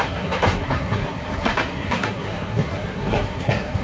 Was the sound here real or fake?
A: fake